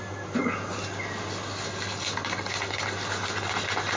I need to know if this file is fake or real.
real